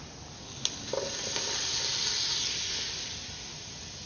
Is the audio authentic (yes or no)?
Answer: yes